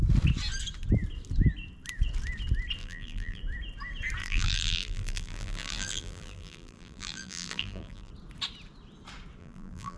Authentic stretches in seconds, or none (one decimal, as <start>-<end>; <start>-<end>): 0.0-2.8; 3.4-4.2; 8.1-9.4